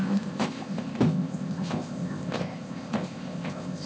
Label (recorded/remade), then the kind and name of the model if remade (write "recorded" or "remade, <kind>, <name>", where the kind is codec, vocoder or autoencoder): remade, codec, ZipCodec